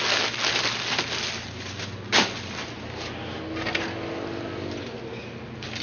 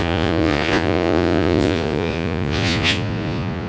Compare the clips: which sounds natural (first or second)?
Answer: first